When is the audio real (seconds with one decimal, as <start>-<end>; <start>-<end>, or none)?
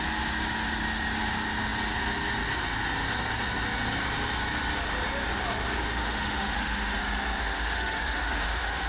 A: 0.0-5.8; 7.0-7.4